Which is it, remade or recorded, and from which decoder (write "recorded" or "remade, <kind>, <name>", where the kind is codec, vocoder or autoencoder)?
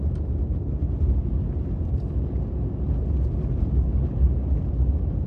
recorded